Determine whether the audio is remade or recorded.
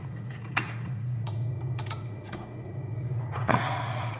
remade